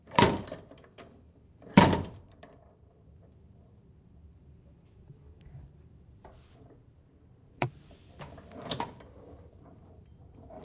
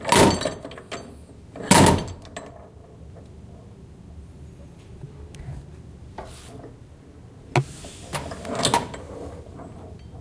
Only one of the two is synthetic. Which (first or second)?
first